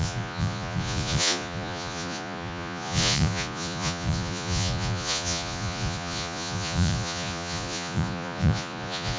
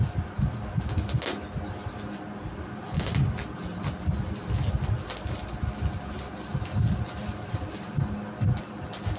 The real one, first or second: second